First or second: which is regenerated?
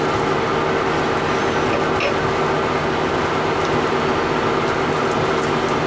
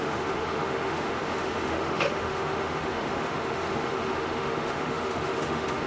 second